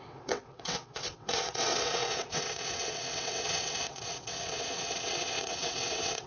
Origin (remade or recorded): remade